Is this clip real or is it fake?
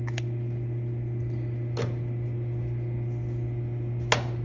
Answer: real